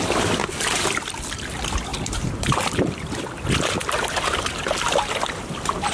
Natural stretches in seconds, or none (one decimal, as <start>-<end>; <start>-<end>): 0.0-1.9; 3.2-5.9

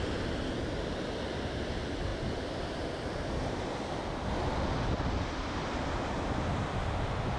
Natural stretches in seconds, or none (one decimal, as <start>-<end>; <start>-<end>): 0.0-7.4

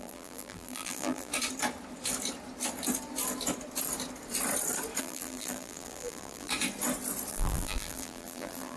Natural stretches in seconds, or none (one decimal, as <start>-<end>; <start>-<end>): 1.3-5.0; 6.5-7.3

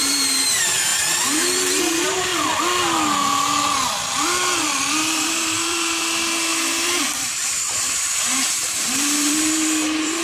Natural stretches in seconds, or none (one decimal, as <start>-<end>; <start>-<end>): 2.3-4.9